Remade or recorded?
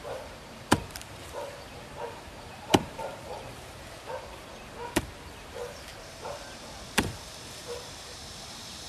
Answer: remade